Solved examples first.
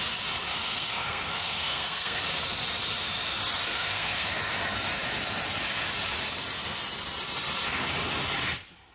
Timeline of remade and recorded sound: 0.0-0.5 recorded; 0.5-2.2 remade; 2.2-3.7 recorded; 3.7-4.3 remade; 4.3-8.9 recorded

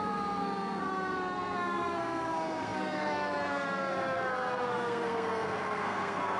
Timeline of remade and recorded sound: 0.0-6.4 remade